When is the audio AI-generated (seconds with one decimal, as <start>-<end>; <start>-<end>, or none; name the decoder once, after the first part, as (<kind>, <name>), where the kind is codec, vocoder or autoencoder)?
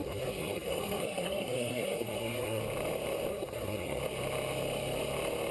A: 0.0-2.6 (codec, SNAC); 3.3-4.0